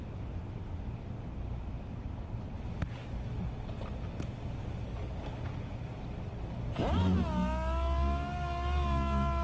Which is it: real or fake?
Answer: real